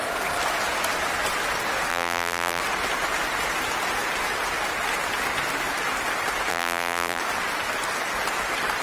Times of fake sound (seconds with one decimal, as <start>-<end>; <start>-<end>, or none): 1.9-2.6; 6.5-7.2